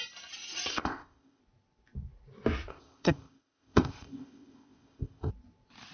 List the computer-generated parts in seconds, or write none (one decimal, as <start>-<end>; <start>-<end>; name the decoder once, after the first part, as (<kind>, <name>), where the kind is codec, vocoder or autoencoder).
0.7-1.4 (codec, ZipCodec); 2.7-5.3